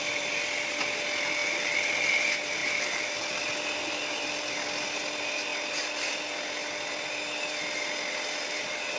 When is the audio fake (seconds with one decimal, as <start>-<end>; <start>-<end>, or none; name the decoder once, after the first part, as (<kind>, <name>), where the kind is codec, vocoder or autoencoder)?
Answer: 1.4-2.0 (vocoder, BigVGAN v2); 2.6-3.4